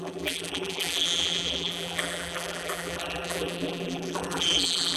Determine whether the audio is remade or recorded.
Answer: remade